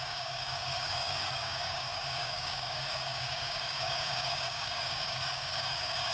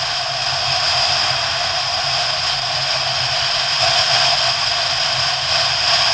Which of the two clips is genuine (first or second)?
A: second